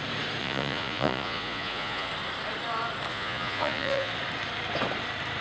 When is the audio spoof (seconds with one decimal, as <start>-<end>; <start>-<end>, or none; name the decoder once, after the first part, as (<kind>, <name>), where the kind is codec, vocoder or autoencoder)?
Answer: 0.4-2.1 (vocoder, Vocos); 3.1-4.1